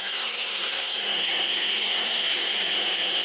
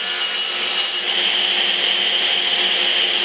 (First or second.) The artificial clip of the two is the first